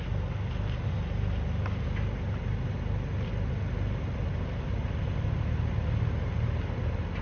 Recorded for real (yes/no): yes